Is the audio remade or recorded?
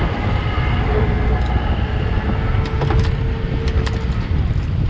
recorded